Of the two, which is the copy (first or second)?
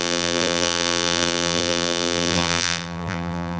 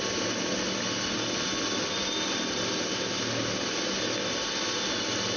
first